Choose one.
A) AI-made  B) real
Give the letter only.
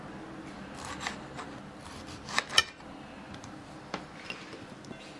B